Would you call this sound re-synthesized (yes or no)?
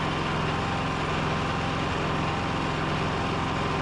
no